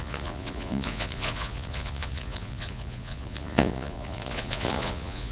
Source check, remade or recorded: remade